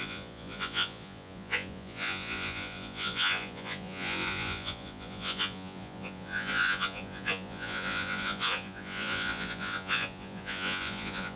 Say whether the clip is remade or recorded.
remade